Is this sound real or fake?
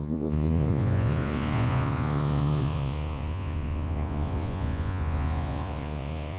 fake